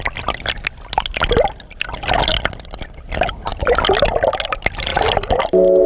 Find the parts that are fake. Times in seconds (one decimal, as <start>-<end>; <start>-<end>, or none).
none

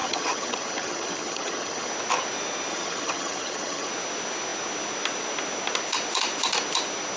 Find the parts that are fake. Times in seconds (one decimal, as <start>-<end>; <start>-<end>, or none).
0.0-1.9; 2.7-3.9

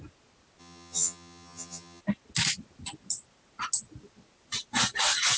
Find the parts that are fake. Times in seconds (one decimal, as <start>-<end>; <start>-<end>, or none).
0.6-2.0

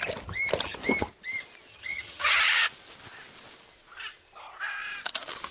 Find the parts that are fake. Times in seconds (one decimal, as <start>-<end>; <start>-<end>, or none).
1.7-2.4

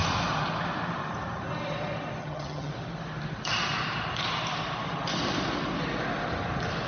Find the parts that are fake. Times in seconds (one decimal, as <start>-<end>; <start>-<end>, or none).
2.2-2.7